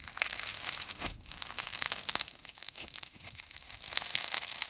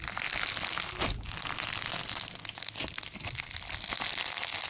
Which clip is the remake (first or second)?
first